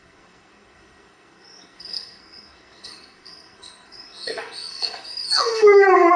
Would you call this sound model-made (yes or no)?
yes